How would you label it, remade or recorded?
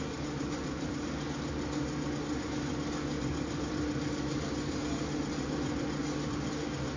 recorded